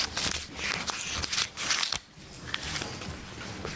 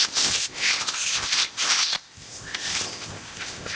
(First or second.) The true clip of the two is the first